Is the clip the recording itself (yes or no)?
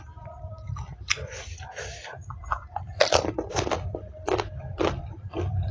no